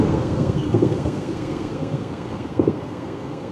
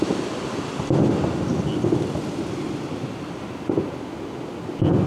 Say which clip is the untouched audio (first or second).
second